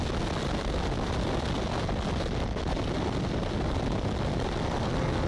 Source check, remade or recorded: recorded